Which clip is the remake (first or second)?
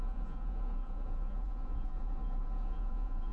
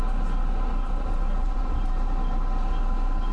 first